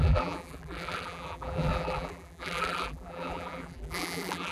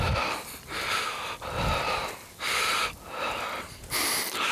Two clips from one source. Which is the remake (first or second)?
first